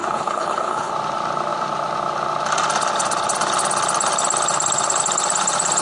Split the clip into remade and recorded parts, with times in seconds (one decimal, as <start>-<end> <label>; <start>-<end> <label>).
0.0-0.9 remade; 0.9-5.8 recorded